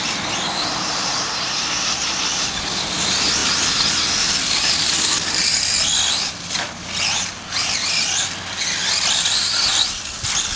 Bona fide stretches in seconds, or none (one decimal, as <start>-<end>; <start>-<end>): 0.0-3.4; 5.1-9.7